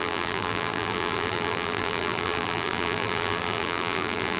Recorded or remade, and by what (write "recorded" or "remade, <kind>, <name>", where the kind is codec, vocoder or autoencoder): remade, vocoder, BigVGAN v2